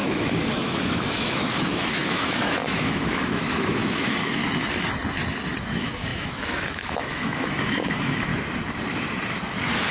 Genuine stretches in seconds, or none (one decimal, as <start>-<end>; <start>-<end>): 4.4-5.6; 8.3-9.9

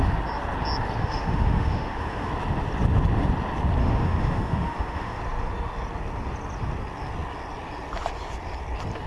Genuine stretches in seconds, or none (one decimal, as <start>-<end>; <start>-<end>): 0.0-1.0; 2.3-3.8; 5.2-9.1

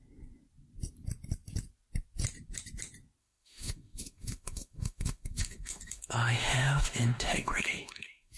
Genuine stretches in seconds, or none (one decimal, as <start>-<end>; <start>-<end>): 0.0-3.2

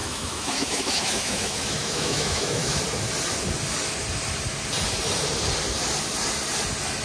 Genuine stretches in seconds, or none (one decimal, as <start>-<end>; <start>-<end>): 2.8-7.0

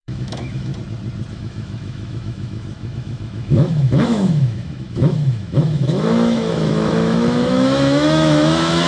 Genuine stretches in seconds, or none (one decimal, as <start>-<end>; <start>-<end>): 0.7-1.3